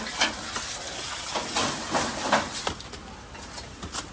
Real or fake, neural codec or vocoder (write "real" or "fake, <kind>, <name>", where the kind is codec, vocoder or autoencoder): real